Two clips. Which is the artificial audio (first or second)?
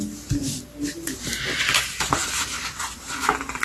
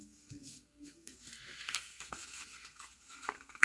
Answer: second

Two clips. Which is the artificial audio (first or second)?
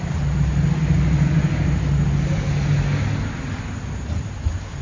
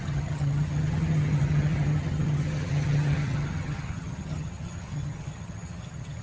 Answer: second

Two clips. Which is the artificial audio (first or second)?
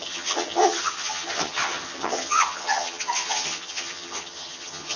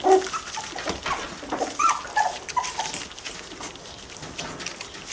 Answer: first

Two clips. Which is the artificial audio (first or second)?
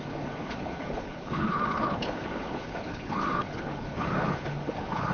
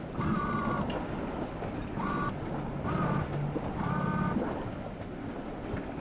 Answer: first